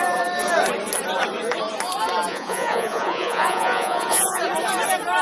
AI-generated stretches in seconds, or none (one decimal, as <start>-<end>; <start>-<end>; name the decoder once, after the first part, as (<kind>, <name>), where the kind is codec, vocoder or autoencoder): 2.3-4.4 (vocoder, Vocos)